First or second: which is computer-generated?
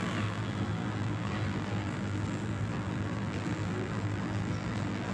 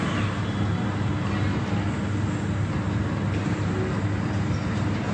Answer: first